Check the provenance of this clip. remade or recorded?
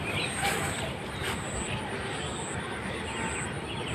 recorded